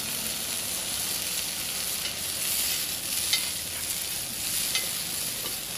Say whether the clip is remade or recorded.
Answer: recorded